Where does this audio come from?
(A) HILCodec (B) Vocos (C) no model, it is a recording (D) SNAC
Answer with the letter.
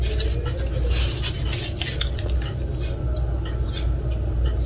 C